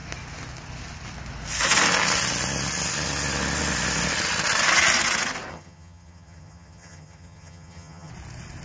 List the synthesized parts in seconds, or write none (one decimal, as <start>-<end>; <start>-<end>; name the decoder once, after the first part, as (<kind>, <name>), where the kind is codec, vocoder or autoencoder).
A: 5.5-8.1 (vocoder, HiFi-GAN)